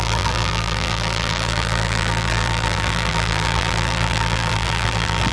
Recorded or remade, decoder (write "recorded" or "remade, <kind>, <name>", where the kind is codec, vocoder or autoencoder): remade, vocoder, BigVGAN v2